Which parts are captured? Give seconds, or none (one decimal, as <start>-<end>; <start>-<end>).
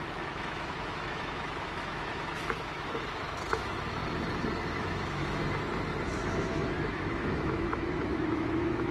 4.0-4.5; 5.4-6.1